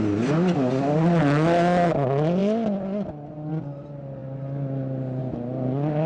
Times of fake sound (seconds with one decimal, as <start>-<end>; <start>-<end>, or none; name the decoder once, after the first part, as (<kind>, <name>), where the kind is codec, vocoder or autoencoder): none